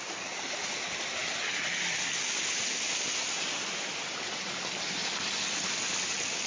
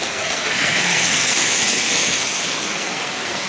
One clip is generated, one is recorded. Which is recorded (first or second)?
first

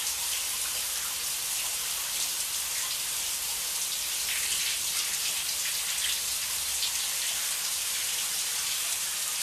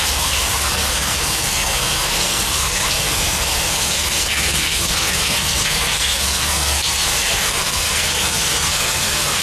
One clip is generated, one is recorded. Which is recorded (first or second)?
first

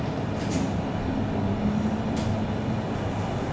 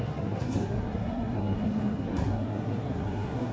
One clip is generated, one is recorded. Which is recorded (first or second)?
first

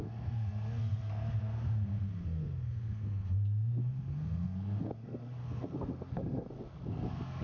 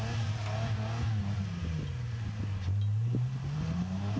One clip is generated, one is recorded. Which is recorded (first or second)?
second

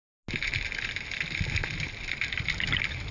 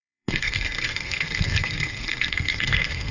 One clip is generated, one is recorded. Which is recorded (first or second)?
first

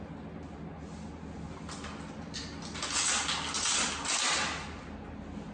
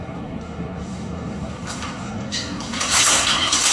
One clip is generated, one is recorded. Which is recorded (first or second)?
first